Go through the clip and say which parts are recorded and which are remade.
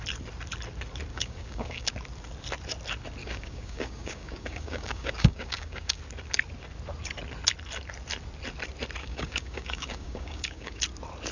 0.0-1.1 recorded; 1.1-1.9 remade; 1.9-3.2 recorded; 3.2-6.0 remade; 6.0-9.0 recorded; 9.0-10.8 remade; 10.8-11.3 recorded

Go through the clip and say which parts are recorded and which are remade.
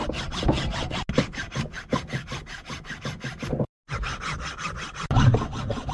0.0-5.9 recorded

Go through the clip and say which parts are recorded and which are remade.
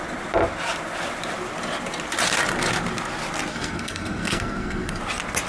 0.0-3.5 recorded; 3.5-5.0 remade; 5.0-5.5 recorded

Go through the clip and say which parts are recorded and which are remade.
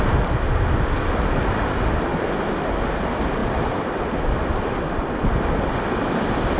0.0-6.6 recorded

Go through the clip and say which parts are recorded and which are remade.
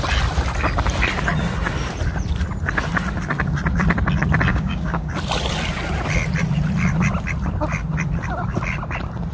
0.0-4.5 recorded; 4.5-5.1 remade; 5.1-9.3 recorded